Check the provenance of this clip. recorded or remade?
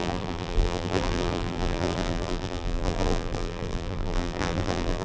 remade